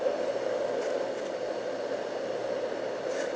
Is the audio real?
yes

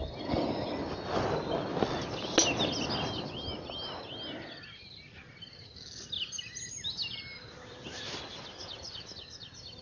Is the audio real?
yes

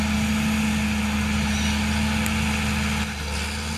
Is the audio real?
yes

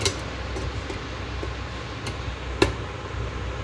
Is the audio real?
yes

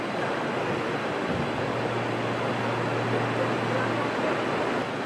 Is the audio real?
yes